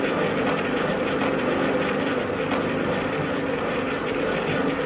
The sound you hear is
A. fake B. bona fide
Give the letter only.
B